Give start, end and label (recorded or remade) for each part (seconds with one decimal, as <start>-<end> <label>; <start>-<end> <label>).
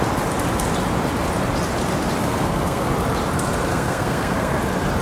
0.0-2.2 recorded; 2.2-2.9 remade; 2.9-3.7 recorded; 3.7-4.6 remade; 4.6-5.0 recorded